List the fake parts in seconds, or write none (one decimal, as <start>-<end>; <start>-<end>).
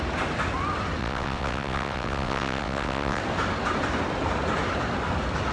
1.0-3.2